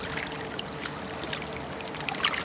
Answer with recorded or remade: recorded